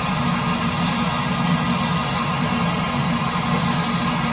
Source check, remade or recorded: recorded